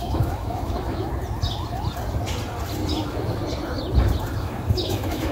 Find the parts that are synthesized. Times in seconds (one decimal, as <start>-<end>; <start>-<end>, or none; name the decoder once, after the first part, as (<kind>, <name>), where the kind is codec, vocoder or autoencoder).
0.0-1.1 (autoencoder, DAC-VAE); 2.9-3.4; 4.4-5.3

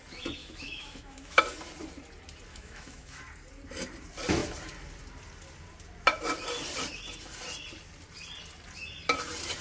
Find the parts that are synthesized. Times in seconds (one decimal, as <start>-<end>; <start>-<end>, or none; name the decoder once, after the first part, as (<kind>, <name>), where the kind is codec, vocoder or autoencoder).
0.4-1.4 (autoencoder, DAC-VAE); 2.5-3.2